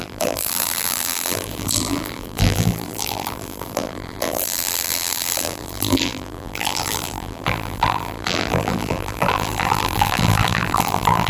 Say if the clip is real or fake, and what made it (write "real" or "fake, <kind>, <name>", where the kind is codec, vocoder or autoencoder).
fake, vocoder, BigVGAN v2